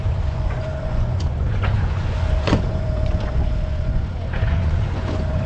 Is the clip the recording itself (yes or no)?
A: no